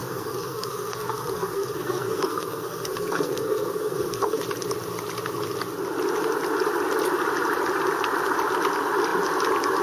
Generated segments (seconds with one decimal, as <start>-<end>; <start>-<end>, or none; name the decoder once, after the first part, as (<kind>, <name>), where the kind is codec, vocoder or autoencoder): 0.0-4.4 (codec, SNAC)